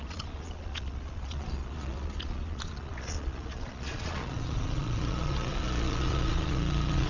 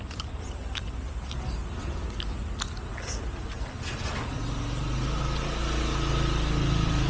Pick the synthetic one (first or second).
first